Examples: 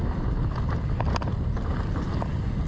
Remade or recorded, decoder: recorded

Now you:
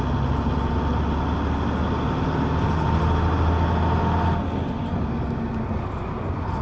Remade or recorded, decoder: recorded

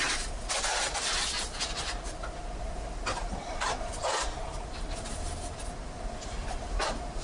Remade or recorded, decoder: recorded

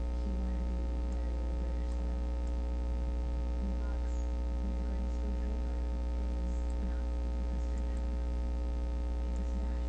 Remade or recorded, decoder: recorded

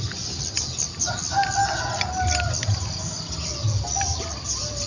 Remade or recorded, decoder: recorded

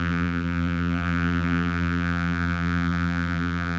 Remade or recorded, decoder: remade, vocoder, BigVGAN v2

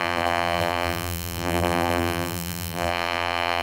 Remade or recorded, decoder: remade, vocoder, BigVGAN v2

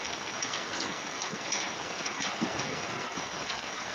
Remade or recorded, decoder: remade, codec, SNAC